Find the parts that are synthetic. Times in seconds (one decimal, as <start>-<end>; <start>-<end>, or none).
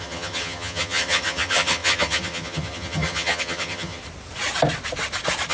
0.0-4.0